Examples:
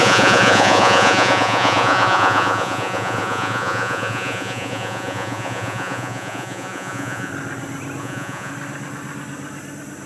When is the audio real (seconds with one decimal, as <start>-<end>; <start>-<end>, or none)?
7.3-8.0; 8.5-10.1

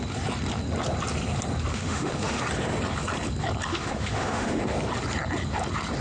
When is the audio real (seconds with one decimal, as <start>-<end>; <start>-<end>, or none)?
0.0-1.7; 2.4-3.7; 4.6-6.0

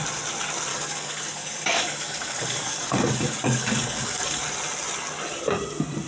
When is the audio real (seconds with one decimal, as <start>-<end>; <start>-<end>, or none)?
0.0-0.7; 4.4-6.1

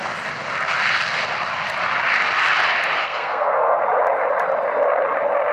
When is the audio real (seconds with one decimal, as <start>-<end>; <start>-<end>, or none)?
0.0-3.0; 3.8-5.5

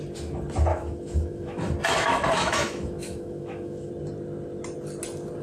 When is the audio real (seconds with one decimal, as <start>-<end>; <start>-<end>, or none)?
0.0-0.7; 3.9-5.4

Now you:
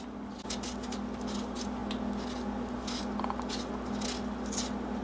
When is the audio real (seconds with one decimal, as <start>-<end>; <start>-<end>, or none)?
0.0-5.0